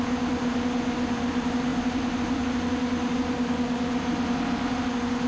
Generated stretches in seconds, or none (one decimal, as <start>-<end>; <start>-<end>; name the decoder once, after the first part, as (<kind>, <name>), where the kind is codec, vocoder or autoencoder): none